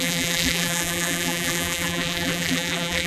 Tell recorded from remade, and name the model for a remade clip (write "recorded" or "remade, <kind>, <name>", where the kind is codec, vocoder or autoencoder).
remade, vocoder, BigVGAN v2